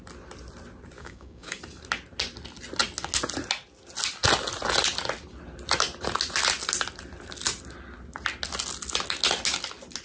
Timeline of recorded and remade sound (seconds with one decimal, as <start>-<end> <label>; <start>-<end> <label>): 0.0-1.0 recorded; 1.0-1.6 remade; 1.6-10.0 recorded